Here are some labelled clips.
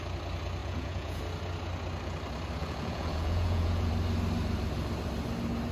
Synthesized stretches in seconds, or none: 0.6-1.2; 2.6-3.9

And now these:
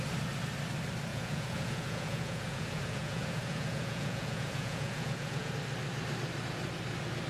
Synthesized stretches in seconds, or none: 1.1-5.5